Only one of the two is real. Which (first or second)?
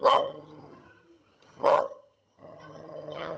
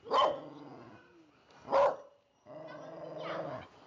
second